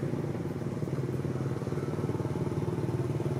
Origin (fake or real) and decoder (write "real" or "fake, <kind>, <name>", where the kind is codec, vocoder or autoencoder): real